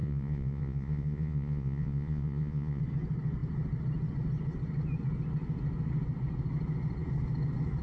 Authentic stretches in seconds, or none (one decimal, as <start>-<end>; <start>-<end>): 2.8-7.8